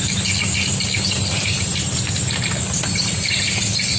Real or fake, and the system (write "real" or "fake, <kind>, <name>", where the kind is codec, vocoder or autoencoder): real